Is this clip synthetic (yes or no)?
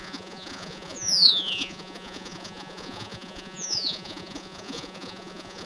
yes